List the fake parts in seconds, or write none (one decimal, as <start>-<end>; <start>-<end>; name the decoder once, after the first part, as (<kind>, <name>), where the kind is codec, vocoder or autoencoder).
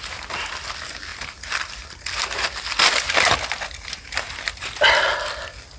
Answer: none